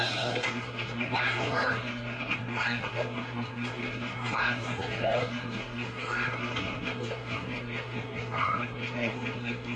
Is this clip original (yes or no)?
no